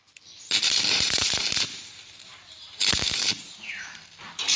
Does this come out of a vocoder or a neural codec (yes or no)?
yes